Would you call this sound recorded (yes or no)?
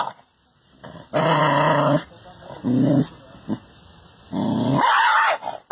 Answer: yes